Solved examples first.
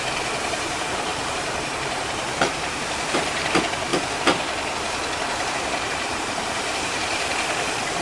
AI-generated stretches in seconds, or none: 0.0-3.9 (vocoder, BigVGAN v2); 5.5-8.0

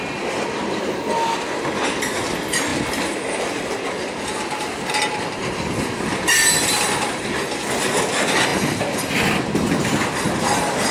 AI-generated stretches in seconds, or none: 2.7-4.9 (vocoder, BigVGAN v2)

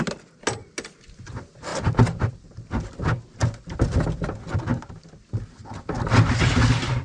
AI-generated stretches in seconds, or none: 1.7-2.3 (vocoder, BigVGAN v2); 4.7-5.8

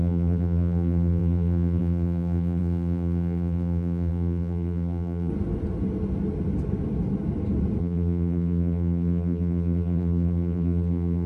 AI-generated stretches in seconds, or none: 0.0-5.3 (vocoder, BigVGAN v2); 7.8-11.3